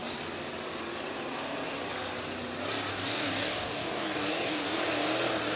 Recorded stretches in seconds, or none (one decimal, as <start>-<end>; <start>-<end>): 0.0-2.9; 4.8-5.6